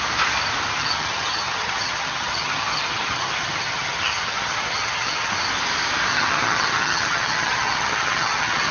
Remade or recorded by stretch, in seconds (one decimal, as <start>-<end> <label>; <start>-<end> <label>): 0.0-0.8 recorded; 0.8-5.3 remade; 5.3-6.1 recorded; 6.1-8.7 remade